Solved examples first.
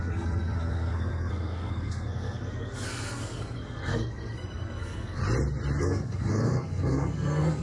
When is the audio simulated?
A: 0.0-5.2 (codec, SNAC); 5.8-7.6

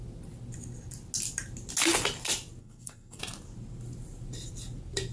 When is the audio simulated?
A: 2.6-3.2 (codec, SNAC)

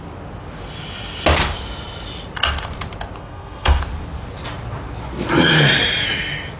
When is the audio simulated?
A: 3.2-3.8 (codec, SNAC)

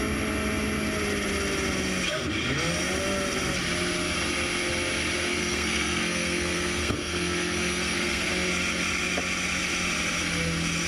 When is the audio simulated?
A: 5.4-8.3 (codec, SNAC)

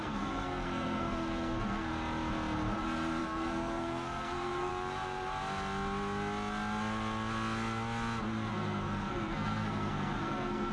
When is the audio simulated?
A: 0.0-1.9 (codec, SNAC); 3.2-4.7; 8.5-10.7

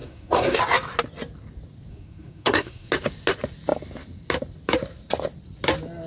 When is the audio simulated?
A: 0.0-0.6 (codec, SNAC); 1.9-2.9